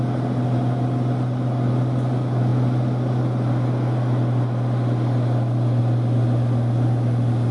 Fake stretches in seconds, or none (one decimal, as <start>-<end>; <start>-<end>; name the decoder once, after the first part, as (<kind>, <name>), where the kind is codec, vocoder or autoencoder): none